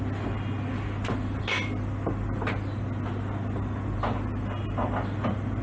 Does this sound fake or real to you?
real